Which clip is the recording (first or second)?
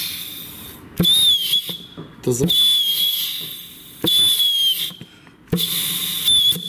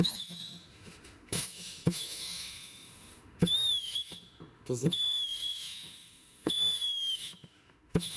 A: first